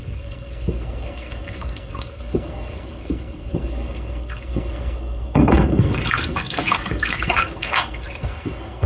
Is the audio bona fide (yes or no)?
no